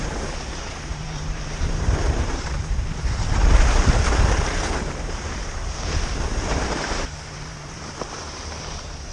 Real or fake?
fake